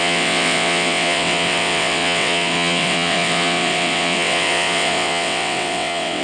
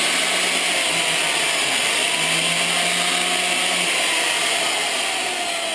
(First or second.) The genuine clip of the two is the second